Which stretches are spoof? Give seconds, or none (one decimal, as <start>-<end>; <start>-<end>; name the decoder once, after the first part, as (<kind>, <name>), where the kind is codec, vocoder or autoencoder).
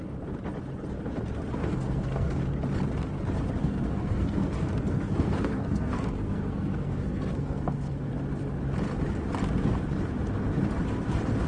1.6-2.4 (codec, SNAC); 3.6-8.1